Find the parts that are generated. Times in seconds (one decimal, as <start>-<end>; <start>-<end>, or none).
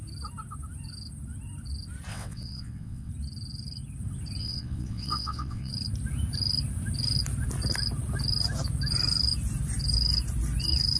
2.1-3.1; 4.4-5.7